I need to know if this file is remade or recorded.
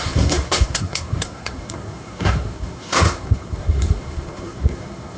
remade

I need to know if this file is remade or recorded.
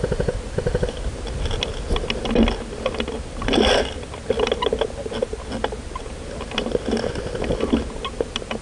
recorded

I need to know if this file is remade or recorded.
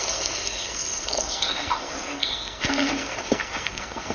remade